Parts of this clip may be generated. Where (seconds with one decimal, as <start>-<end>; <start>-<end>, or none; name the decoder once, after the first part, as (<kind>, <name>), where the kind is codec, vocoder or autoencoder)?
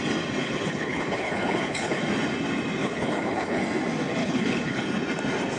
0.4-2.0 (codec, HILCodec); 2.8-3.6; 4.2-4.9